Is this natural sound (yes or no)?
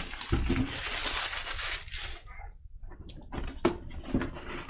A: yes